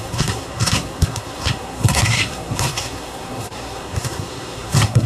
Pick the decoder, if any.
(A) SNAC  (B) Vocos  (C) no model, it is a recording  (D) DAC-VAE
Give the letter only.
A